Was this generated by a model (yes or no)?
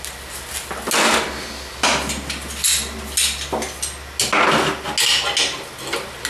no